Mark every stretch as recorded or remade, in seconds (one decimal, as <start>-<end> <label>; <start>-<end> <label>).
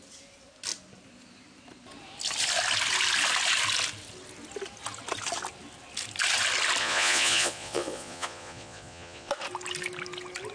0.0-6.8 recorded; 6.8-9.3 remade; 9.3-10.5 recorded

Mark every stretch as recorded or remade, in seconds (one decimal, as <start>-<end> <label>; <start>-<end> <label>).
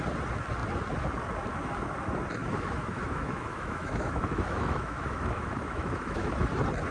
0.0-2.4 recorded; 2.4-6.5 remade; 6.5-6.9 recorded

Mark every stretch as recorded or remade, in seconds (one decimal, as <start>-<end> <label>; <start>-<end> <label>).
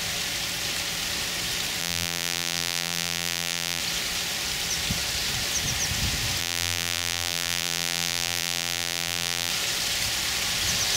0.0-1.8 recorded; 1.8-3.8 remade; 3.8-6.4 recorded; 6.4-9.5 remade; 9.5-11.0 recorded